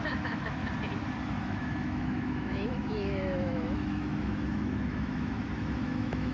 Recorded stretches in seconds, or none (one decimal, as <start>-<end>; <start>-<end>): 0.6-1.4